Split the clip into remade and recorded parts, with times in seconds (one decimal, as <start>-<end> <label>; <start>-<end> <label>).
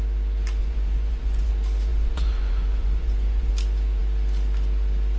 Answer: 0.0-0.6 recorded; 0.6-1.5 remade; 1.5-1.9 recorded; 1.9-3.5 remade; 3.5-5.2 recorded